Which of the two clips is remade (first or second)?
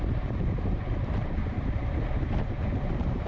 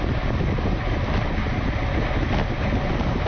first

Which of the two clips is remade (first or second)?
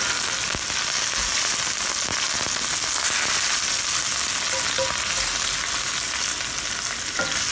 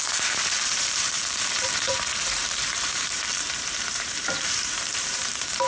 second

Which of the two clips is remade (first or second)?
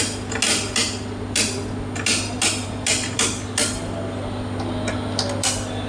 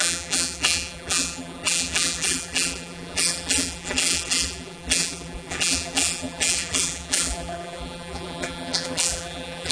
second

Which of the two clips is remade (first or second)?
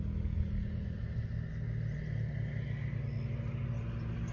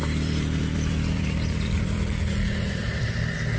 second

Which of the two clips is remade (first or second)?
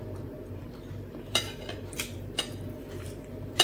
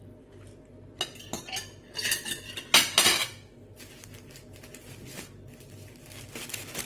first